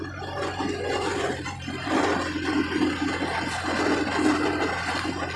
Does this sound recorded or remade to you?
recorded